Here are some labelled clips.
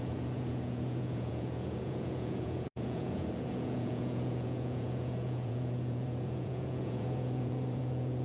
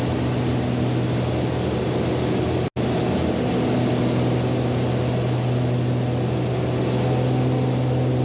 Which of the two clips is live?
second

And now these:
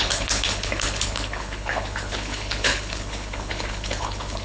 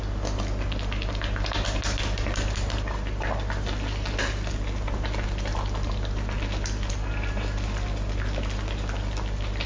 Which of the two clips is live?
second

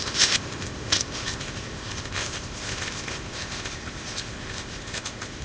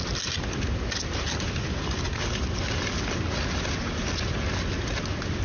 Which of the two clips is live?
second